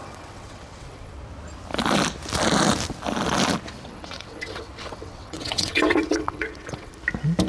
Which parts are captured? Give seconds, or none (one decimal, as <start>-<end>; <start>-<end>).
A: 1.2-3.9; 6.9-7.5